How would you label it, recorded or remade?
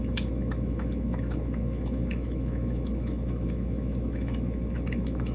remade